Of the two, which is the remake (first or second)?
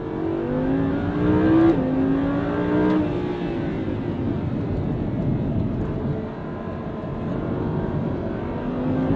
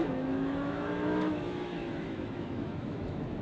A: second